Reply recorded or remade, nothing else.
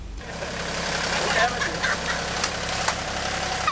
remade